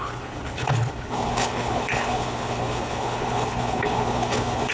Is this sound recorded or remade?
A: remade